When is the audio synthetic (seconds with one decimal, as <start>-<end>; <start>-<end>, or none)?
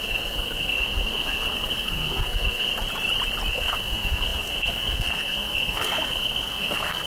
0.0-2.7; 3.5-7.1